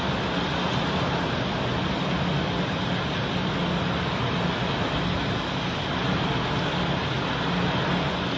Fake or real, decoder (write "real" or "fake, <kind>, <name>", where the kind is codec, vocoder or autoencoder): real